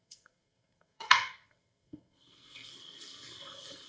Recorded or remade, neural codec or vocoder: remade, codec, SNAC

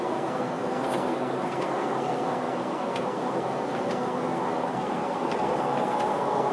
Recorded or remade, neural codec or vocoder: remade, codec, SNAC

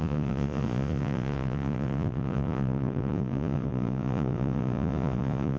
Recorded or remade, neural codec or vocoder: remade, vocoder, Vocos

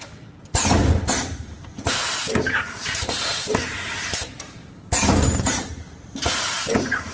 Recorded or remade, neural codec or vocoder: remade, vocoder, BigVGAN v2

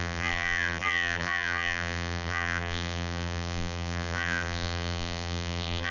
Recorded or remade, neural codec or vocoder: remade, vocoder, BigVGAN v2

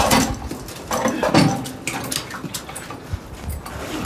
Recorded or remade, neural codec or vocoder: recorded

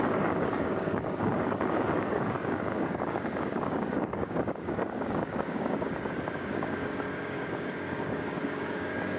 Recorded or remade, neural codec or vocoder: remade, codec, DAC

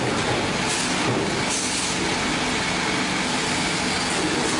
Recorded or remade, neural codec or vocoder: recorded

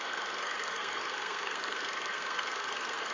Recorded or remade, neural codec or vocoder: remade, codec, SNAC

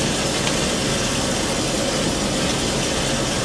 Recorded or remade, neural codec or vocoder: recorded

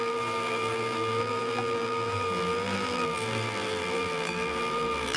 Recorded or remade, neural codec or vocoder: remade, vocoder, BigVGAN v2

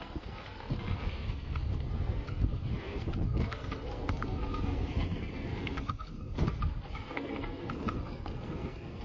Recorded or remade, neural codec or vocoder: remade, codec, SNAC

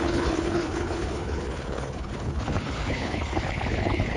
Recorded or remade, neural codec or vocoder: remade, codec, HILCodec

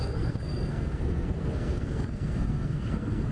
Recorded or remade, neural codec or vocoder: remade, codec, SNAC